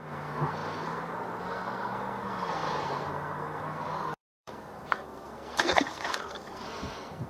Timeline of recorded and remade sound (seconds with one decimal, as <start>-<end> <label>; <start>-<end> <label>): 0.0-7.3 remade